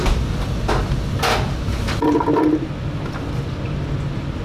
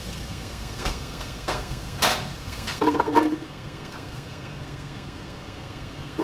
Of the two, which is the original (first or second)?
first